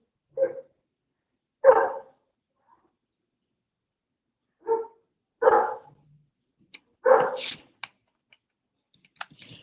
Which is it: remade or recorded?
recorded